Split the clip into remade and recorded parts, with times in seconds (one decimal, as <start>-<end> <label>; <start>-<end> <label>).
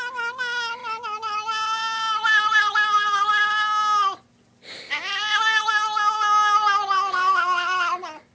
0.0-8.3 recorded